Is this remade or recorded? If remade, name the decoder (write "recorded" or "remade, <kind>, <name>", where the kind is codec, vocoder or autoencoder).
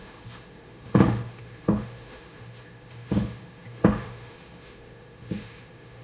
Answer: remade, autoencoder, DAC-VAE